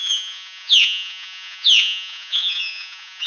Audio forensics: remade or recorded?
remade